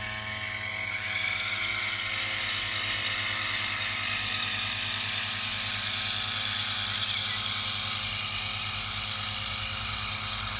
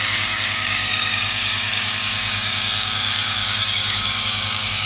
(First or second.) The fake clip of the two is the second